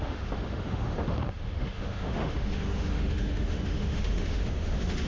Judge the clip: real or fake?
fake